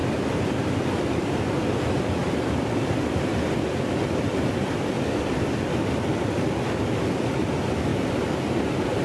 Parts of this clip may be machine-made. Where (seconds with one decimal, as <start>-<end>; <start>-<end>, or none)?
0.0-1.6; 7.9-8.6